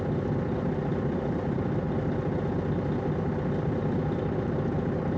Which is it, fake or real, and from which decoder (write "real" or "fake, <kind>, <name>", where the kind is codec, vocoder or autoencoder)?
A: real